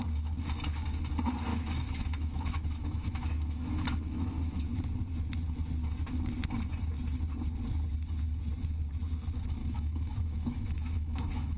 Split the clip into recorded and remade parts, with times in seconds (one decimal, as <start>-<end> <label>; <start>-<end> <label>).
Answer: 0.0-1.5 recorded; 1.5-4.6 remade; 4.6-9.6 recorded; 9.6-11.6 remade